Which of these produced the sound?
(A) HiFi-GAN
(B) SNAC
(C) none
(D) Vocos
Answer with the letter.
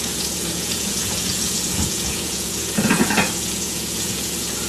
D